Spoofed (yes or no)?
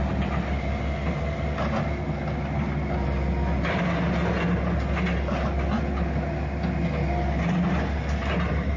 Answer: no